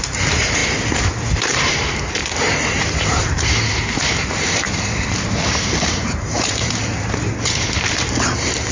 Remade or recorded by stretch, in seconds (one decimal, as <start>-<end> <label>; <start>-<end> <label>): 0.0-0.6 remade; 0.6-1.3 recorded; 1.3-8.7 remade